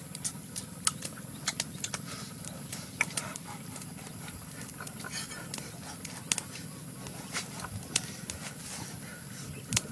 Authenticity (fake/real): real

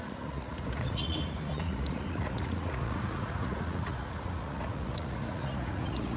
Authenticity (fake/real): fake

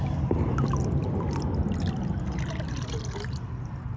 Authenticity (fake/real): real